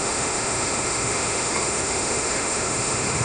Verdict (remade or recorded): remade